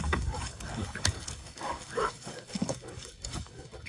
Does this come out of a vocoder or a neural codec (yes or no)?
yes